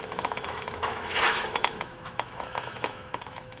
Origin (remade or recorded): remade